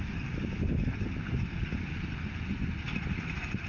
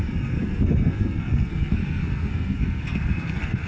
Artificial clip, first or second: second